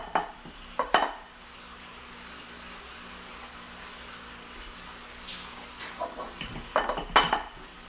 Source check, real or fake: real